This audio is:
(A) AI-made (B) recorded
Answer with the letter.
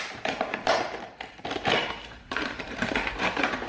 A